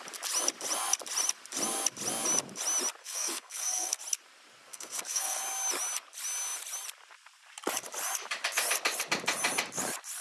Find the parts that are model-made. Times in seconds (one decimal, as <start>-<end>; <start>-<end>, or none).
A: 3.0-4.0; 4.7-5.4